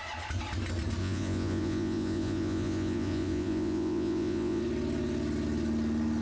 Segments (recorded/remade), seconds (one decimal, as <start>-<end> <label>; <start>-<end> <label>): 0.0-1.0 recorded; 1.0-4.6 remade; 4.6-6.2 recorded